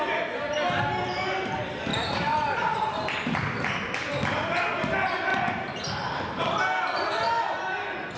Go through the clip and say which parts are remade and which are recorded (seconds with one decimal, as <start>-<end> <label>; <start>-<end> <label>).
0.0-1.9 recorded; 1.9-3.1 remade; 3.1-5.3 recorded; 5.3-6.4 remade; 6.4-8.2 recorded